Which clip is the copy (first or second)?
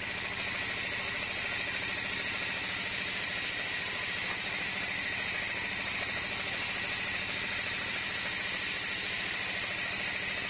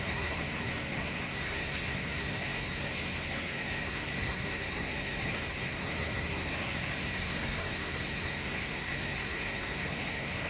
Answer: second